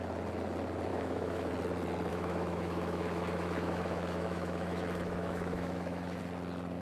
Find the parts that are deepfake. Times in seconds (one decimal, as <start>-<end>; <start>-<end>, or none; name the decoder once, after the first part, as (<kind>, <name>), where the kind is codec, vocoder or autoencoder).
0.9-1.5 (autoencoder, DAC-VAE); 2.1-6.2